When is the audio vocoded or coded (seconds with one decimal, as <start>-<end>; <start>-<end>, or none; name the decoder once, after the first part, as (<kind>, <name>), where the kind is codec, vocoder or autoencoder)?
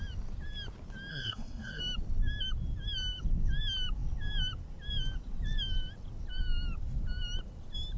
1.1-1.8 (codec, SNAC)